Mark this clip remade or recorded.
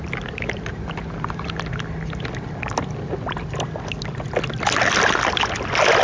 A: recorded